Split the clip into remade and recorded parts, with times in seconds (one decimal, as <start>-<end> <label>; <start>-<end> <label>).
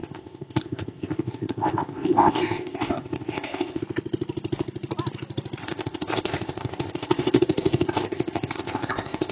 0.0-3.8 remade; 3.8-5.6 recorded; 5.6-9.3 remade